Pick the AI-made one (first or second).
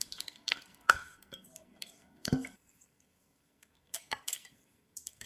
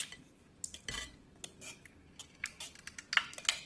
first